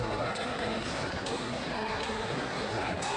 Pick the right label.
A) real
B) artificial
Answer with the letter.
B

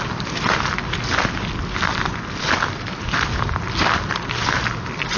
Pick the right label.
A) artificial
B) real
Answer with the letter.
B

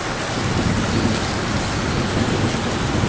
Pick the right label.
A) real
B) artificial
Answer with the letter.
A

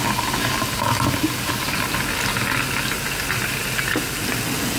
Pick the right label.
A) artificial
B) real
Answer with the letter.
B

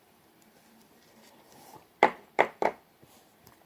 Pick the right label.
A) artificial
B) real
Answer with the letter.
A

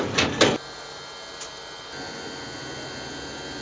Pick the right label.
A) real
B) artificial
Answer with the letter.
A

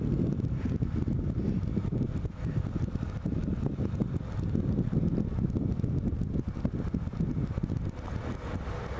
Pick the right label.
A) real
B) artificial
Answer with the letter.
A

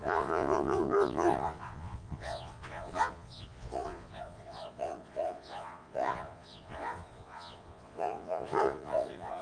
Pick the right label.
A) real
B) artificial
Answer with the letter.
B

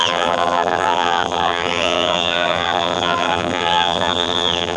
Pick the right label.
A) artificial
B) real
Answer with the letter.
A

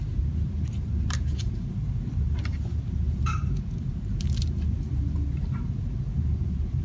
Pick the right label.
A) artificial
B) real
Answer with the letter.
A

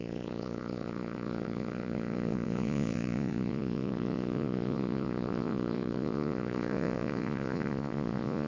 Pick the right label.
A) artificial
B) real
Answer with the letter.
A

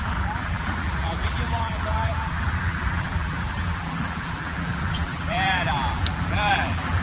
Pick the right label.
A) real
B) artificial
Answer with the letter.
B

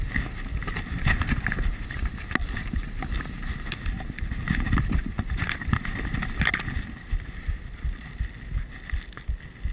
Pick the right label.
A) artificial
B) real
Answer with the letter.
B